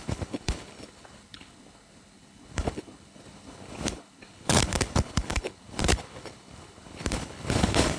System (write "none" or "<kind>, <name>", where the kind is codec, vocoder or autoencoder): codec, HILCodec